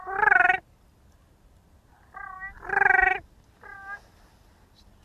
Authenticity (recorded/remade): recorded